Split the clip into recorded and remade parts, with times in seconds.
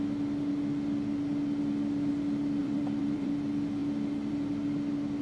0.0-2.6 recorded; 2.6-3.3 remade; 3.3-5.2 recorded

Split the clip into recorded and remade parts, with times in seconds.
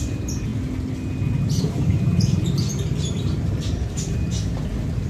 0.0-0.5 remade; 0.5-1.6 recorded; 1.6-5.1 remade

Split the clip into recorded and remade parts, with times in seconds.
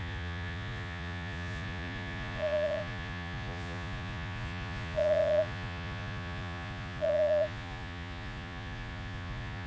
0.0-9.7 remade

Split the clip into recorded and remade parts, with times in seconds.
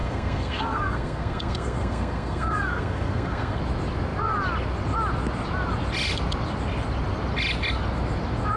0.0-3.6 remade; 3.6-8.6 recorded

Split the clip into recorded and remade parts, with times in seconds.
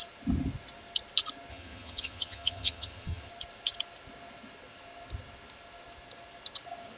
0.0-1.5 recorded; 1.5-3.3 remade; 3.3-7.0 recorded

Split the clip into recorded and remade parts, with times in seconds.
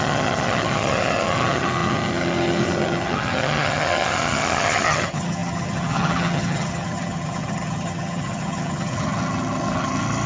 0.0-10.3 remade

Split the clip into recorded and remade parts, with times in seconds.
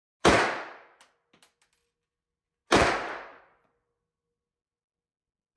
0.0-5.6 recorded